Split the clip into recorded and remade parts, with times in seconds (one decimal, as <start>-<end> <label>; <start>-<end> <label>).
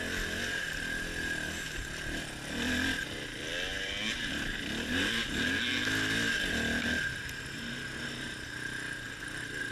0.0-9.7 recorded